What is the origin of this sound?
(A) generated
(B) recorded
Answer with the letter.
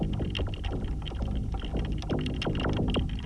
B